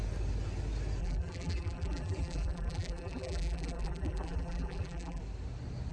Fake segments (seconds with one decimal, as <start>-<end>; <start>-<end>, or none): 1.0-5.2